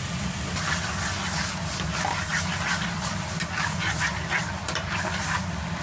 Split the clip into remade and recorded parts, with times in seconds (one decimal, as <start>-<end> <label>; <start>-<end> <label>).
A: 0.0-4.4 recorded; 4.4-5.2 remade; 5.2-5.8 recorded